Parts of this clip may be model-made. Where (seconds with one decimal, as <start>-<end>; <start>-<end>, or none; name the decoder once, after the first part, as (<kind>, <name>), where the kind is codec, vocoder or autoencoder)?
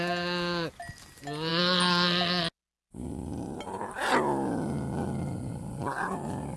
none